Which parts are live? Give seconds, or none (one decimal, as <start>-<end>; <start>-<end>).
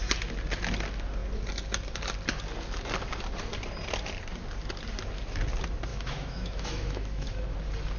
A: 0.0-5.9; 7.3-8.0